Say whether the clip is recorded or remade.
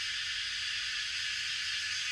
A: recorded